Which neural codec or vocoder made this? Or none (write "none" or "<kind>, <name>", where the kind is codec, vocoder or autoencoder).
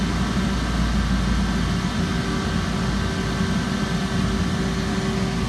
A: none